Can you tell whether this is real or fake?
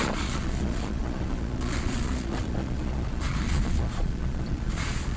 fake